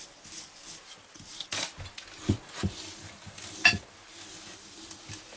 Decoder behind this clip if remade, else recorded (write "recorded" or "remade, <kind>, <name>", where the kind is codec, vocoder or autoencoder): recorded